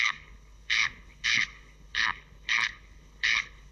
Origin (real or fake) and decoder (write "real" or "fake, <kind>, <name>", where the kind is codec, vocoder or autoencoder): fake, codec, HILCodec